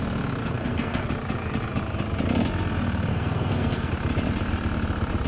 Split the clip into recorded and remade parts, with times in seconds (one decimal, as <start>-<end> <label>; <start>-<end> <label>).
0.0-0.4 recorded; 0.4-1.1 remade; 1.1-3.1 recorded; 3.1-3.9 remade; 3.9-5.3 recorded